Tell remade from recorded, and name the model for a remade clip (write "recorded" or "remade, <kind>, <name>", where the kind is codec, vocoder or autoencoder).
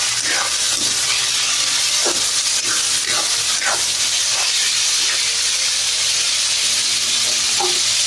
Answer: recorded